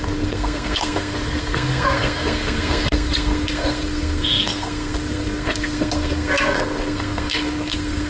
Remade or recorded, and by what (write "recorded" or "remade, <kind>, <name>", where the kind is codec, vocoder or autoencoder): remade, codec, SNAC